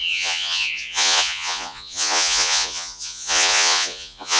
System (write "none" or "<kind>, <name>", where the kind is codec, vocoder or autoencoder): vocoder, Vocos